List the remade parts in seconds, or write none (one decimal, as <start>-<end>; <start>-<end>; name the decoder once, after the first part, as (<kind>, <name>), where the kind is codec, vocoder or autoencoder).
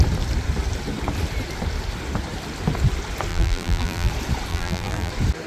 3.3-4.1 (vocoder, BigVGAN v2); 4.5-5.1